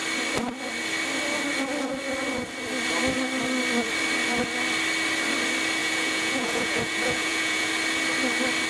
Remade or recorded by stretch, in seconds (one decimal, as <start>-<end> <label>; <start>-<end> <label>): 0.0-5.8 recorded; 5.8-7.7 remade; 7.7-8.7 recorded